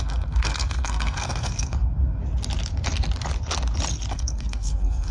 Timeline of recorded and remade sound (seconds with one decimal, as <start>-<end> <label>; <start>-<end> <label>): 0.0-2.2 remade; 2.2-4.1 recorded; 4.1-5.1 remade